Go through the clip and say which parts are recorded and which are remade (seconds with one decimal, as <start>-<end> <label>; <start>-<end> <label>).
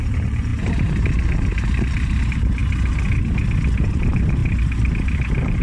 0.0-2.6 remade; 2.6-3.9 recorded; 3.9-4.4 remade; 4.4-4.9 recorded; 4.9-5.6 remade